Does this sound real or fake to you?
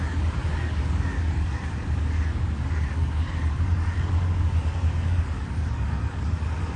fake